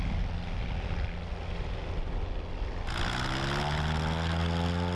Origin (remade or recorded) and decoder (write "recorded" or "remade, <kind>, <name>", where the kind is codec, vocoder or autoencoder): recorded